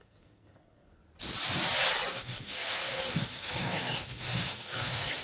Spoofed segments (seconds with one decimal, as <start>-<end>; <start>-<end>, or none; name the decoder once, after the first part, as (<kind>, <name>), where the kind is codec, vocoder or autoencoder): 0.0-1.0 (codec, SNAC); 2.1-5.2